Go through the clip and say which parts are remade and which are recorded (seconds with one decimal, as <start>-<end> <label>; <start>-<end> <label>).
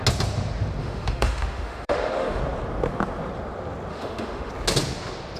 0.0-0.8 recorded; 0.8-2.4 remade; 2.4-3.9 recorded; 3.9-4.5 remade; 4.5-5.4 recorded